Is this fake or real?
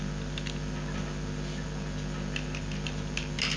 real